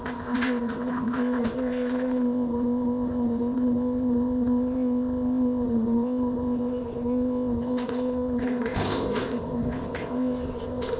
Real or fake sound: fake